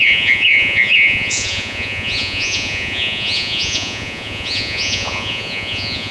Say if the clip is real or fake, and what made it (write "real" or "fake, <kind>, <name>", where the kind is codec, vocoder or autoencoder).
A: fake, vocoder, Vocos